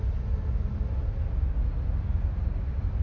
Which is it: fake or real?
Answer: real